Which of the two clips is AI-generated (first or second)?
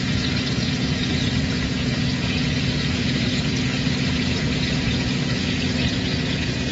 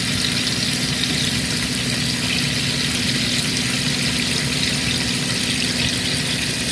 first